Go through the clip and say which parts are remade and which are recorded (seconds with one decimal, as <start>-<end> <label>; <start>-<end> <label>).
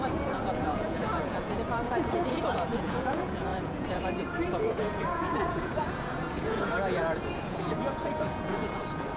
0.0-9.2 remade